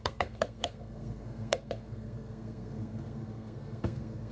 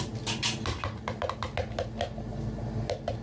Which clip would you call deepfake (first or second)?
first